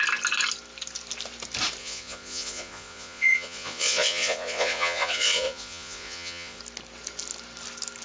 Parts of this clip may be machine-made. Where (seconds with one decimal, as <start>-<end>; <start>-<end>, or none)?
1.8-6.6